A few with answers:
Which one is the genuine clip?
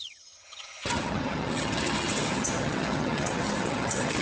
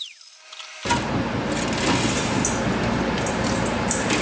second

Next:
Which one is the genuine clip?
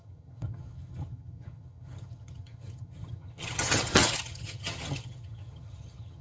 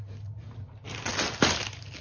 second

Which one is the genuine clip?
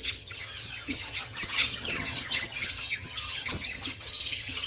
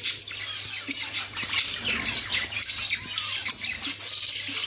second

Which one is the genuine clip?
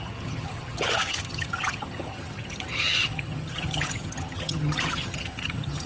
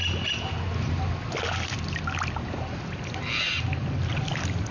second